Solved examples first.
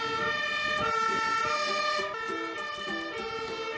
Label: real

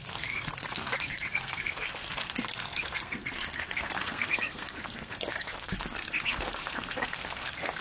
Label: fake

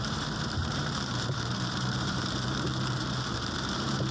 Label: fake